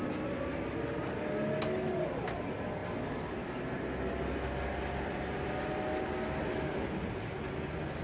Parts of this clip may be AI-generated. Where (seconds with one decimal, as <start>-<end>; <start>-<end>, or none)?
none